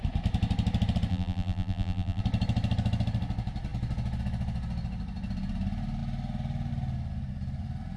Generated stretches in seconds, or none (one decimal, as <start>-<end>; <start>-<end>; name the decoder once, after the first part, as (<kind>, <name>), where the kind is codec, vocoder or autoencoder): 1.1-2.2 (vocoder, BigVGAN v2)